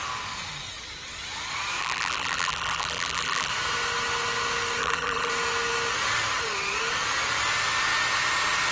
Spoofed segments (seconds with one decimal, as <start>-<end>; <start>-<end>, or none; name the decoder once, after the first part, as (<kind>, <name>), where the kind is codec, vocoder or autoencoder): 1.8-3.5 (vocoder, BigVGAN v2); 4.8-5.3